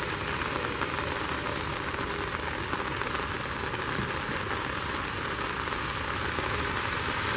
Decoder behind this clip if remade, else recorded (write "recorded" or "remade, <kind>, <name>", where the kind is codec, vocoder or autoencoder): recorded